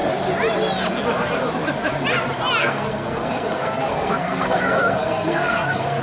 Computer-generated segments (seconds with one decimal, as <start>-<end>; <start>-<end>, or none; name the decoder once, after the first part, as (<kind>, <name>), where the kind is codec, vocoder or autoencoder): 2.6-6.0 (codec, SNAC)